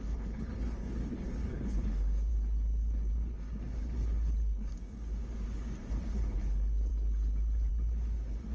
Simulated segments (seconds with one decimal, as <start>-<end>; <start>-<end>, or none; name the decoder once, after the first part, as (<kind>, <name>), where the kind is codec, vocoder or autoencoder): 0.0-4.7 (codec, HILCodec); 5.9-8.5